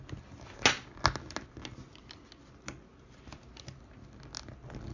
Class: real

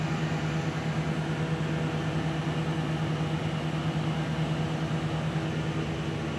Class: real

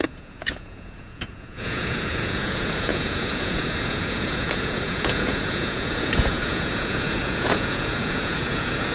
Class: fake